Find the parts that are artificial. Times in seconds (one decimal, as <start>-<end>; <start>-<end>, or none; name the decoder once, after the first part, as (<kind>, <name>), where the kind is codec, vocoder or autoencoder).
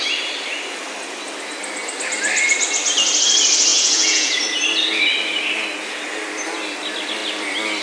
3.7-4.4 (vocoder, Vocos)